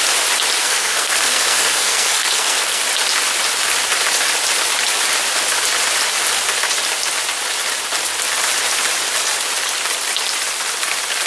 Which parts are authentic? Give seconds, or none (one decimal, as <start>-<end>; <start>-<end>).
0.0-0.6; 2.8-11.3